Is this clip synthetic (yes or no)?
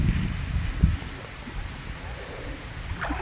no